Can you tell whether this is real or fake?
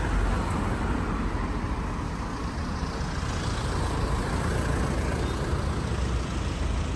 real